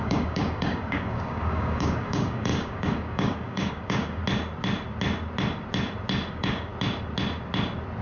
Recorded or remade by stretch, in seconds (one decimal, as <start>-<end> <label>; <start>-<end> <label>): 0.0-4.2 remade; 4.2-6.3 recorded; 6.3-6.7 remade; 6.7-8.0 recorded